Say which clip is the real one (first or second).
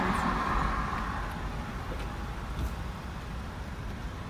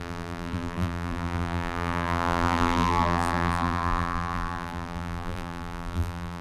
first